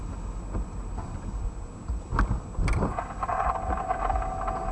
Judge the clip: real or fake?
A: real